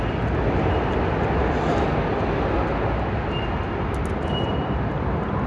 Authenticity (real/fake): real